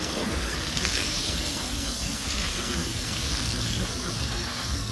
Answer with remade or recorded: remade